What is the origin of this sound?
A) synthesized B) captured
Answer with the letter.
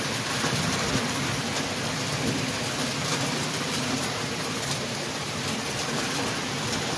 A